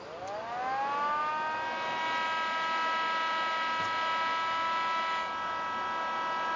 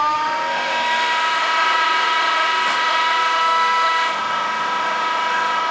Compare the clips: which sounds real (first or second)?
first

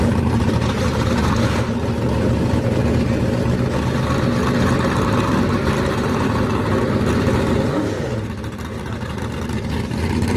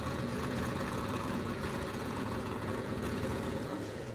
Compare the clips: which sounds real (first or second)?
first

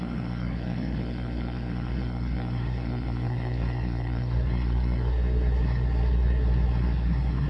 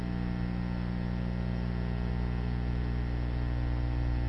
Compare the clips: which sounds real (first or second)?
second